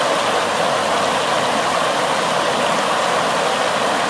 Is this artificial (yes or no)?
no